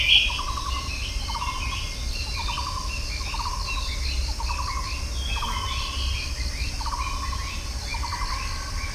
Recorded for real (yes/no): yes